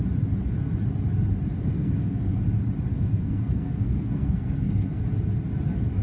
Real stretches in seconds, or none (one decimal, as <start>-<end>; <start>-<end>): 0.0-1.6; 2.4-2.9; 5.0-6.0